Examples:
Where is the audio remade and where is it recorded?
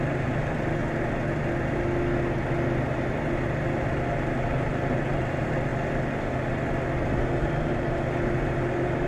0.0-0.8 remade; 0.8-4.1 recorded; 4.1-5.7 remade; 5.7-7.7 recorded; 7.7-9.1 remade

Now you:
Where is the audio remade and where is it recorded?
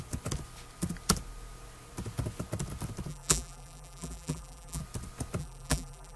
0.0-3.1 recorded; 3.1-4.8 remade; 4.8-5.4 recorded; 5.4-6.2 remade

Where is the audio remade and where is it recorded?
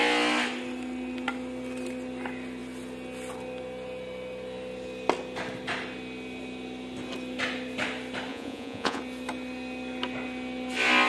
0.0-8.3 recorded; 8.3-9.0 remade; 9.0-11.1 recorded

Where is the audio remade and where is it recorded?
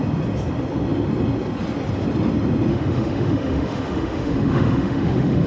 0.0-2.7 recorded; 2.7-5.5 remade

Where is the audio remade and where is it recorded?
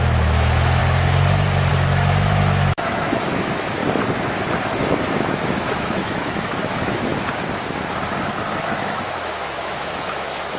0.0-0.8 remade; 0.8-1.7 recorded; 1.7-3.8 remade; 3.8-4.7 recorded; 4.7-7.1 remade; 7.1-8.8 recorded; 8.8-10.6 remade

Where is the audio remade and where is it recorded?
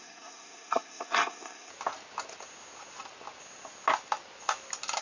0.0-1.7 remade; 1.7-5.0 recorded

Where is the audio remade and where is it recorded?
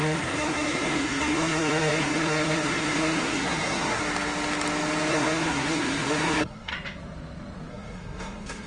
0.0-4.0 remade; 4.0-5.1 recorded; 5.1-6.7 remade; 6.7-7.7 recorded; 7.7-8.7 remade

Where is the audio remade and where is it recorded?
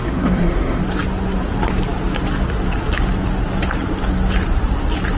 0.0-0.8 remade; 0.8-5.2 recorded